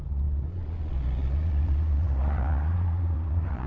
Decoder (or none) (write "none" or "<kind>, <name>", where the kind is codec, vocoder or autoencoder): vocoder, Vocos